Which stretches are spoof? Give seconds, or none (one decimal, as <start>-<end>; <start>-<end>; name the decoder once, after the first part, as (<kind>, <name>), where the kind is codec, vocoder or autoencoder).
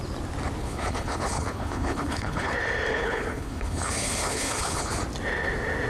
0.6-2.5 (codec, HILCodec); 2.9-4.9